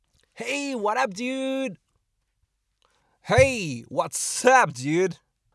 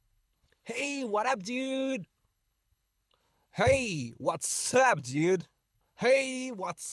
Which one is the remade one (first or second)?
second